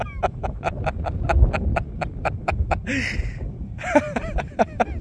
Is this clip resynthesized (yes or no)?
no